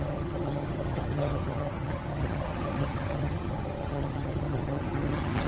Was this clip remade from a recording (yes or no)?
yes